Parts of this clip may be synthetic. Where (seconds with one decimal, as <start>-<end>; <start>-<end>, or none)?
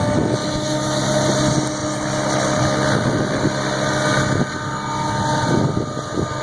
0.4-1.0